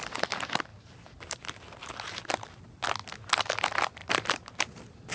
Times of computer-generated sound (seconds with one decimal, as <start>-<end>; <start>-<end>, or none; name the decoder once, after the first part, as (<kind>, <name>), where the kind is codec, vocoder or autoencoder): none